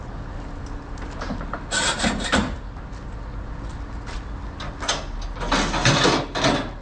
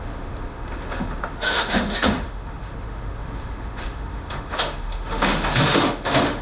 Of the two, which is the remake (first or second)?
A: second